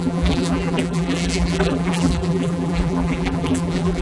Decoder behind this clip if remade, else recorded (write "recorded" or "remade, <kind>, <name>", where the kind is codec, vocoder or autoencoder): remade, vocoder, BigVGAN v2